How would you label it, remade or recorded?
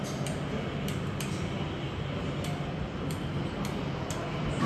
recorded